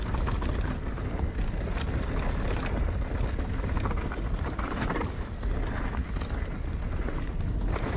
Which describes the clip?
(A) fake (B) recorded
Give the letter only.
B